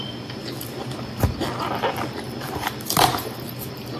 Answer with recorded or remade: recorded